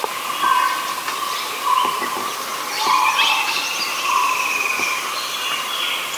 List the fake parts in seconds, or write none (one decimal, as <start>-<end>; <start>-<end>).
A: 1.1-1.7